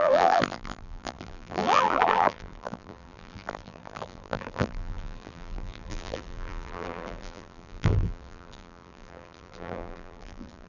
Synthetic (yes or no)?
yes